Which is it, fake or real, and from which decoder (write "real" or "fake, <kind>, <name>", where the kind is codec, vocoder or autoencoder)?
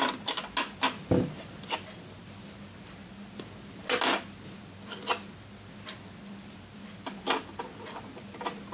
real